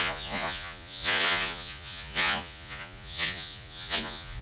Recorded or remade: remade